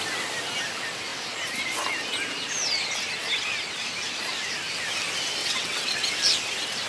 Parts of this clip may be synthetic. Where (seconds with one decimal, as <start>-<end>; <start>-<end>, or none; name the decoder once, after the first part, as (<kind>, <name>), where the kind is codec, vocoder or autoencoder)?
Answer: 5.4-6.1 (vocoder, WaveNeXt)